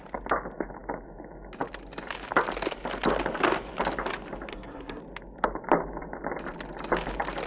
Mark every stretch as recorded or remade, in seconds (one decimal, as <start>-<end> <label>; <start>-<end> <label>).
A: 0.0-4.5 recorded; 4.5-5.0 remade; 5.0-7.5 recorded